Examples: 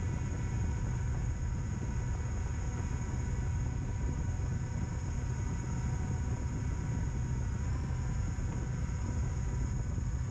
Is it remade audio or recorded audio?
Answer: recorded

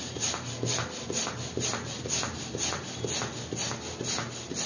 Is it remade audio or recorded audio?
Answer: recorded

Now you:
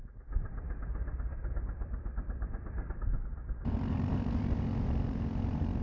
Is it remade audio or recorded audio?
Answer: remade